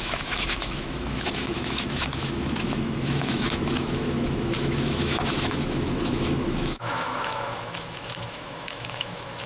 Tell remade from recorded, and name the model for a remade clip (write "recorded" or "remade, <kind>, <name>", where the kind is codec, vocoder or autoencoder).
remade, autoencoder, DAC-VAE